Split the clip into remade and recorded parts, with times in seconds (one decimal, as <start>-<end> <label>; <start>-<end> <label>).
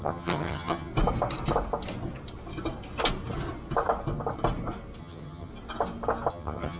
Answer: 0.0-0.9 remade; 0.9-5.0 recorded; 5.0-5.5 remade; 5.5-6.3 recorded; 6.3-6.8 remade